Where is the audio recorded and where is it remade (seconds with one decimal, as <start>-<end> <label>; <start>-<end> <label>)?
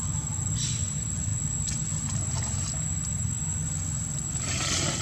0.0-5.0 recorded